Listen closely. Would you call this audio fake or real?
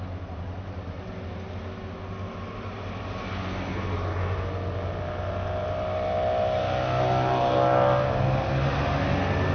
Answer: real